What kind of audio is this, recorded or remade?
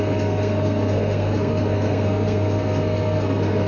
remade